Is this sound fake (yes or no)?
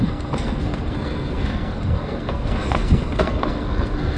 yes